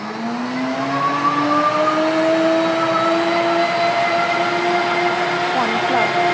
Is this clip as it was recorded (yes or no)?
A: yes